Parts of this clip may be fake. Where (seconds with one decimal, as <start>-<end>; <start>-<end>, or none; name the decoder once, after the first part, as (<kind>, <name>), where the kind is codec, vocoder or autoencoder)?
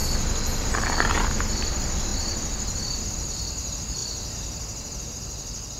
0.6-2.1 (vocoder, BigVGAN v2); 3.1-4.0